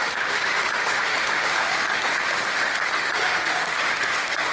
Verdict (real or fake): fake